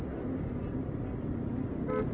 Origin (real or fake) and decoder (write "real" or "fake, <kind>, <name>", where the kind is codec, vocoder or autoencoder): real